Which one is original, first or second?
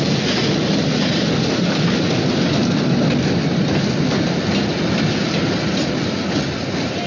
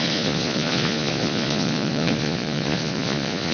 first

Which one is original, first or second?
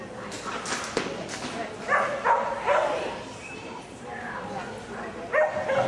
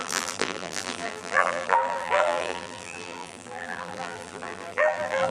first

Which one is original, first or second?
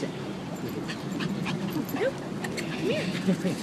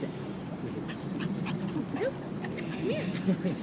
second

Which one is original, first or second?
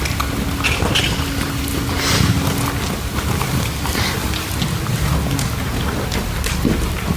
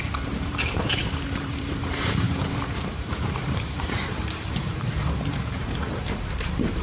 first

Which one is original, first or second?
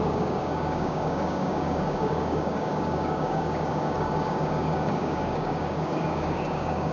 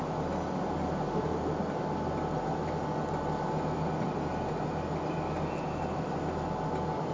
second